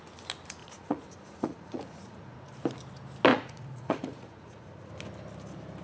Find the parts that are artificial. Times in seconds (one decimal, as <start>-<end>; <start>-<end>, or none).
0.6-2.5; 3.3-4.9